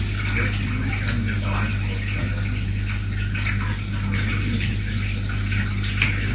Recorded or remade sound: recorded